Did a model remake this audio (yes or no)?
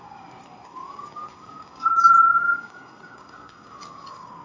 yes